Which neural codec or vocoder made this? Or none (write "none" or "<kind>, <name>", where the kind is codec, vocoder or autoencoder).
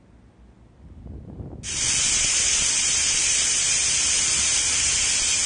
none